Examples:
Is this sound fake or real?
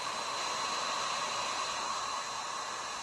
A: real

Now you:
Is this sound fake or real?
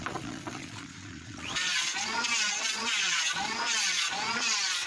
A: fake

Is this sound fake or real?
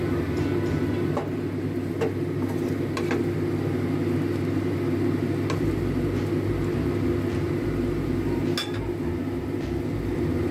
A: real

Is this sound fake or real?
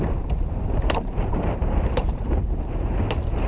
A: fake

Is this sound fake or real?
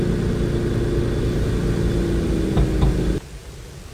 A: real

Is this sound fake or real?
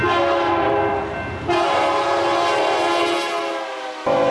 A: real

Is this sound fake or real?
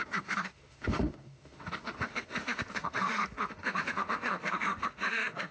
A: fake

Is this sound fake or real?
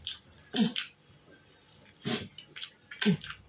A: fake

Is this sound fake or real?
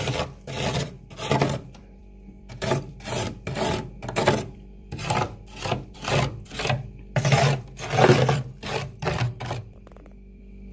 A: fake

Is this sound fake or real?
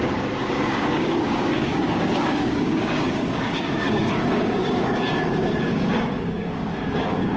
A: fake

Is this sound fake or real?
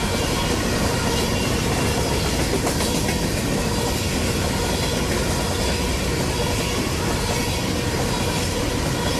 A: real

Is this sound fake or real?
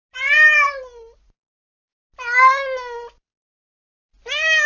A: real